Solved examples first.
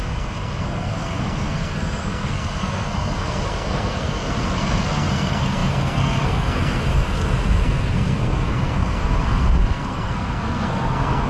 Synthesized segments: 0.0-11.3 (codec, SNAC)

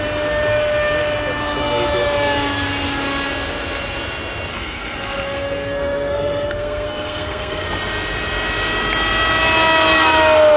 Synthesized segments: 4.5-7.7 (codec, SNAC)

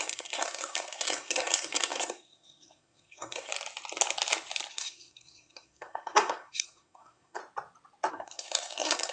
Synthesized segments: 0.0-3.5 (codec, SNAC); 4.7-7.4; 8.1-9.1

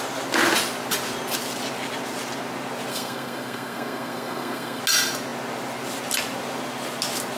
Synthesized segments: 2.9-4.8 (codec, SNAC)

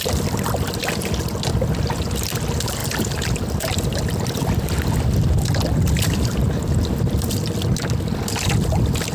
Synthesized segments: none

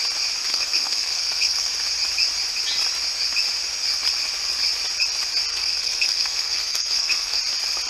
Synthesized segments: 0.5-1.7 (codec, SNAC); 5.5-7.4

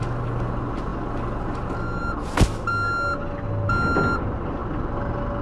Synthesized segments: none

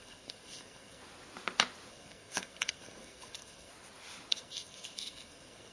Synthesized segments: 0.0-1.0 (codec, SNAC); 1.9-3.7; 4.3-5.7